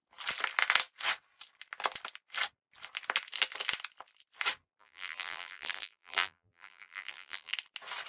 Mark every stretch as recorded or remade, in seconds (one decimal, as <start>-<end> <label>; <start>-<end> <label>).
0.0-4.8 recorded; 4.8-7.5 remade; 7.5-8.1 recorded